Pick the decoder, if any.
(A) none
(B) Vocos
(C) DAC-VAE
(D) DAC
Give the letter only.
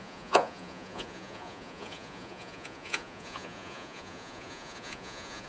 B